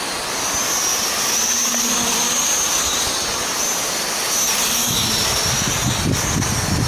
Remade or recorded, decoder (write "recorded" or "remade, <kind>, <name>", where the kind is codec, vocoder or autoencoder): recorded